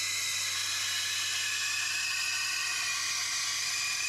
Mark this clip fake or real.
real